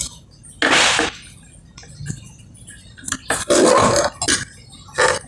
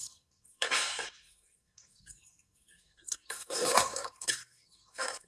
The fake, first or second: second